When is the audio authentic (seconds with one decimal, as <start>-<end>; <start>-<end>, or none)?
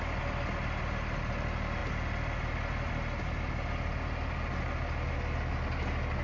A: 0.0-6.2